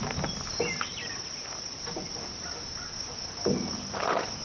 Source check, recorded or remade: recorded